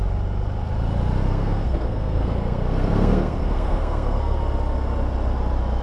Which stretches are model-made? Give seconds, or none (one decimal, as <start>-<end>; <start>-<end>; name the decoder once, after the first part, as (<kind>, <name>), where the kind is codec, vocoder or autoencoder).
1.3-4.4 (codec, SNAC)